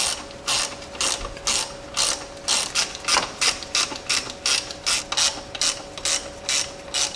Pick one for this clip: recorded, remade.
recorded